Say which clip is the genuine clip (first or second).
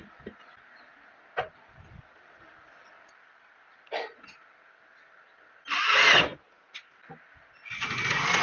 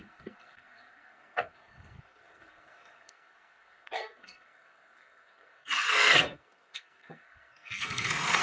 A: first